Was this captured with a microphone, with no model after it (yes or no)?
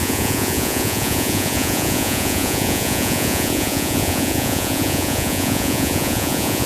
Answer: no